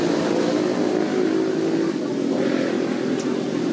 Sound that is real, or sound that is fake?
real